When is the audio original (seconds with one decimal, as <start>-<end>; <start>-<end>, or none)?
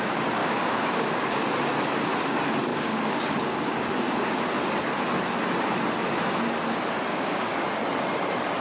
0.0-0.4; 1.4-2.7; 3.9-7.1; 7.6-8.6